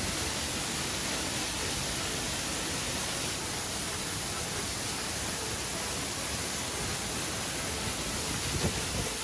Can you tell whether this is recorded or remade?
recorded